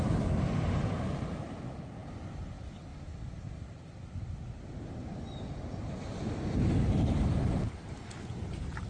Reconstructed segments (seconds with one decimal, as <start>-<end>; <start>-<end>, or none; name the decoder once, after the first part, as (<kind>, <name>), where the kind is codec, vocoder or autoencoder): none